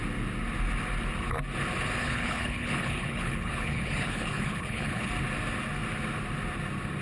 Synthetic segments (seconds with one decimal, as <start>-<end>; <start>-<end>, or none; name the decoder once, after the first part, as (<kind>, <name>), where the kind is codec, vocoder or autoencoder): 2.0-5.1 (codec, HILCodec)